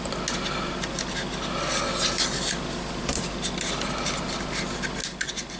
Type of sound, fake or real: real